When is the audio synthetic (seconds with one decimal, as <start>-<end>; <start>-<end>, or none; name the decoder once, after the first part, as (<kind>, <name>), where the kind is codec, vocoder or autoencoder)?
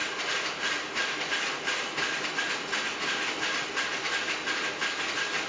none